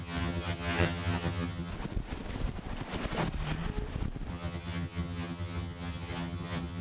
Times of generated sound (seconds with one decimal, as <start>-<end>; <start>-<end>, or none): 0.0-1.7; 4.3-6.8